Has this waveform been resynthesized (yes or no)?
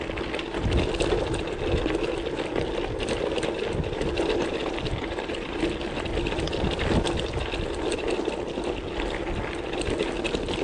no